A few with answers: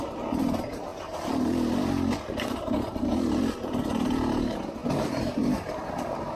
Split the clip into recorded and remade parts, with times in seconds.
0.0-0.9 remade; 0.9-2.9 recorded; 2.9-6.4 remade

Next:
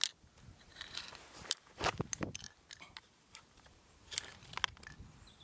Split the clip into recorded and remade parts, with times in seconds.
0.0-0.7 recorded; 0.7-3.9 remade; 3.9-5.4 recorded

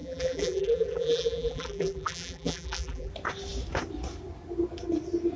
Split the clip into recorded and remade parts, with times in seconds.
0.0-3.1 remade; 3.1-5.4 recorded

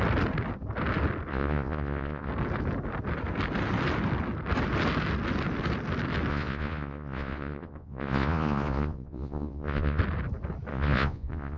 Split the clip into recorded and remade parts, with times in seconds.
0.0-1.3 recorded; 1.3-2.3 remade; 2.3-6.3 recorded; 6.3-10.0 remade; 10.0-10.7 recorded; 10.7-11.6 remade